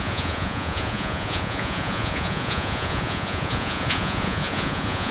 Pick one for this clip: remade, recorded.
remade